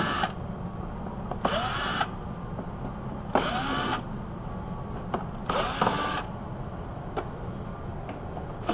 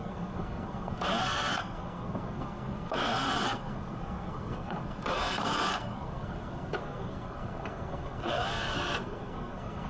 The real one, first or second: first